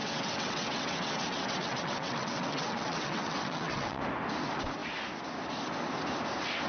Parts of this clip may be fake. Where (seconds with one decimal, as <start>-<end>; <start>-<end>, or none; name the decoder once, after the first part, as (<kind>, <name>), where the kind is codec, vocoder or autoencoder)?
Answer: 0.0-4.0 (vocoder, WaveNeXt)